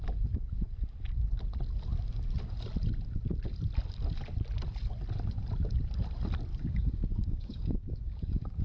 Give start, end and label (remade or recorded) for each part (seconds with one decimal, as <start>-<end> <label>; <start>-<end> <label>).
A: 0.0-6.5 recorded; 6.5-8.6 remade